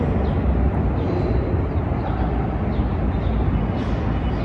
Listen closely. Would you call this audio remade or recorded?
recorded